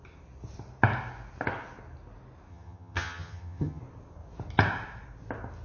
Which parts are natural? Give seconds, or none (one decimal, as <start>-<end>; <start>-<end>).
0.0-2.5; 3.8-5.6